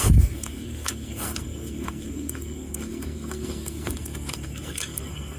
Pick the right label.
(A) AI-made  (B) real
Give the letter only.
A